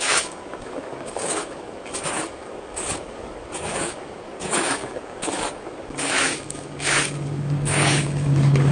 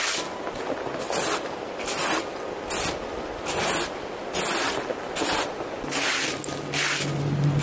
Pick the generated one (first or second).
first